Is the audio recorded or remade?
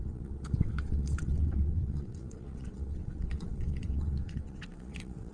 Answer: remade